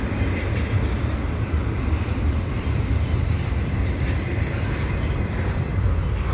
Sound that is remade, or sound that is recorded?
remade